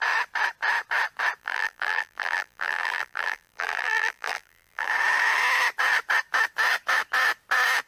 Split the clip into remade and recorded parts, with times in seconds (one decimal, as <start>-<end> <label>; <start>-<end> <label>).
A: 0.0-1.4 recorded; 1.4-4.9 remade; 4.9-7.9 recorded

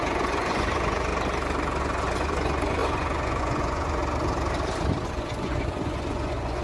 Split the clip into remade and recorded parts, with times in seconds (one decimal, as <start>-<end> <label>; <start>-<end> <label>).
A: 0.0-1.1 remade; 1.1-1.8 recorded; 1.8-4.0 remade; 4.0-5.0 recorded; 5.0-6.6 remade

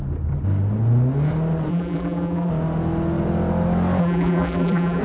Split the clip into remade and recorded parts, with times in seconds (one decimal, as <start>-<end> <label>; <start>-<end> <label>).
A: 0.0-1.7 recorded; 1.7-2.5 remade; 2.5-4.0 recorded; 4.0-5.0 remade

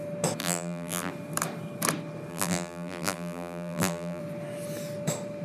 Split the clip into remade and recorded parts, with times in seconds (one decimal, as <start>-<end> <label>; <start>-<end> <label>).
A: 0.0-0.4 recorded; 0.4-1.1 remade; 1.1-2.3 recorded; 2.3-4.2 remade; 4.2-5.4 recorded

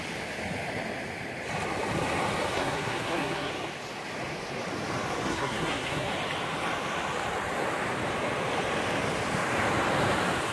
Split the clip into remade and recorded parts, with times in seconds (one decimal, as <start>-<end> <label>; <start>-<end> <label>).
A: 0.0-2.5 recorded; 2.5-3.5 remade; 3.5-5.3 recorded; 5.3-6.1 remade; 6.1-10.5 recorded

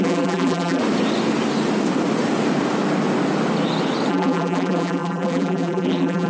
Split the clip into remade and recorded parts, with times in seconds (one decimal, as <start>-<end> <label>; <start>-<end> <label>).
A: 0.0-0.8 remade; 0.8-4.1 recorded; 4.1-6.3 remade

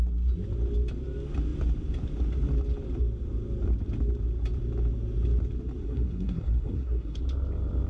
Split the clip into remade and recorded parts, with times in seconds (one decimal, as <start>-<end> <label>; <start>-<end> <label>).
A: 0.0-5.8 recorded; 5.8-7.2 remade; 7.2-7.9 recorded